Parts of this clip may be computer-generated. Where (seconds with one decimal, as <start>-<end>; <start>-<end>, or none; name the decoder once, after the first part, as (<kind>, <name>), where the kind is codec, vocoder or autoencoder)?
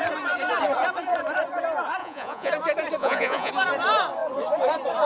2.0-2.5 (vocoder, Vocos); 3.0-3.5